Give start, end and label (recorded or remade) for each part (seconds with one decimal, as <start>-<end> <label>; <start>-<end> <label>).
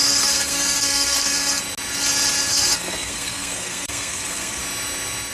0.0-1.6 remade; 1.6-2.5 recorded; 2.5-4.6 remade; 4.6-5.3 recorded